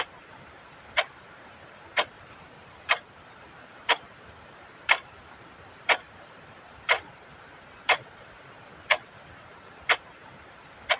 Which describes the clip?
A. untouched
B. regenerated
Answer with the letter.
B